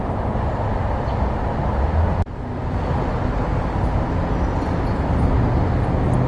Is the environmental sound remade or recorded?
recorded